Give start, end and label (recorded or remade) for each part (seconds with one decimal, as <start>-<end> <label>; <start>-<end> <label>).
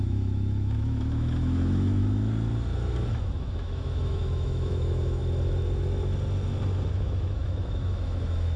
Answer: 0.0-2.0 remade; 2.0-3.2 recorded; 3.2-5.2 remade; 5.2-6.9 recorded; 6.9-8.6 remade